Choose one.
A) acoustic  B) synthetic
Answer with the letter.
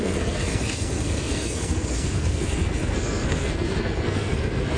B